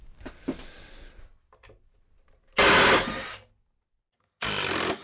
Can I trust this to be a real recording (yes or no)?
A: yes